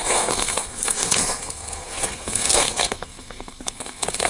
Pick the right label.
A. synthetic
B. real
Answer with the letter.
A